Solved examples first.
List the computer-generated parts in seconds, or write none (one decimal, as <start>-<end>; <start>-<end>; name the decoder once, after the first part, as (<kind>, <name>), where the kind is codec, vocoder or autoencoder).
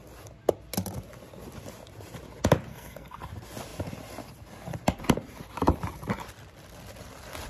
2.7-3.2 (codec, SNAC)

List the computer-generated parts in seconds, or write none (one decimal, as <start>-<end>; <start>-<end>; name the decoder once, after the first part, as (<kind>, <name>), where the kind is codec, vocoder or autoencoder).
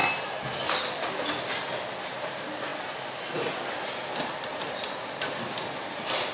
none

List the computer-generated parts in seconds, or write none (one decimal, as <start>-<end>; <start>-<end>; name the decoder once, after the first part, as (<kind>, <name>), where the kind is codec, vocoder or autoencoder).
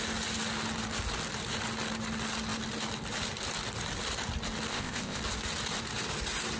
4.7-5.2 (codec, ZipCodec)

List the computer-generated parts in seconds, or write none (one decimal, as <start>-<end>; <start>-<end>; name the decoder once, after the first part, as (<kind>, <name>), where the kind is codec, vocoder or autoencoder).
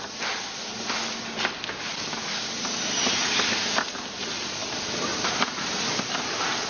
5.1-5.6 (vocoder, BigVGAN v2)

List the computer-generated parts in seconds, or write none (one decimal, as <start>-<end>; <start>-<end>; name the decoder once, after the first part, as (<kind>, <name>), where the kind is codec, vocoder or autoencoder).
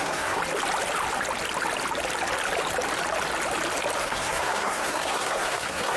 0.0-0.4 (codec, SNAC); 4.0-6.0